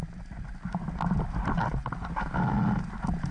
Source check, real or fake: real